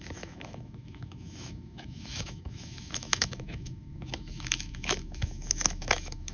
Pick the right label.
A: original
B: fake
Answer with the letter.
B